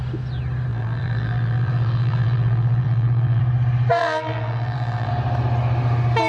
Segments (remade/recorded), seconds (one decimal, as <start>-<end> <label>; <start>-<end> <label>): 0.0-0.7 recorded; 0.7-3.4 remade; 3.4-4.0 recorded; 4.0-5.1 remade; 5.1-6.3 recorded